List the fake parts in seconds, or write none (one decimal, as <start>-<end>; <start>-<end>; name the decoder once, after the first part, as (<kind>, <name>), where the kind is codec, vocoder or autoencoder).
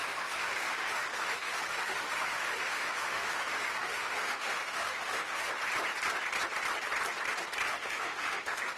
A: 0.0-5.5 (autoencoder, DAC-VAE); 7.7-8.8